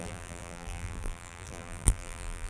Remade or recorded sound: remade